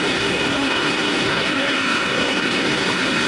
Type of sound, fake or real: fake